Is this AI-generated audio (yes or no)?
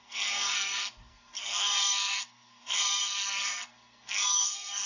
yes